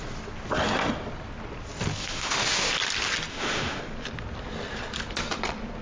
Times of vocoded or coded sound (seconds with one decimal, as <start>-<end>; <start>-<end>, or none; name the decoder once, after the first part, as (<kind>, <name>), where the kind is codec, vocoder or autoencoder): 2.0-2.7 (autoencoder, DAC-VAE); 3.3-3.8